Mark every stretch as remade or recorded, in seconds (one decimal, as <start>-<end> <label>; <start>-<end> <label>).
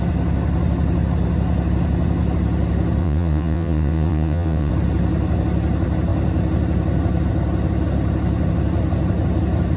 0.0-3.0 recorded; 3.0-4.7 remade; 4.7-9.8 recorded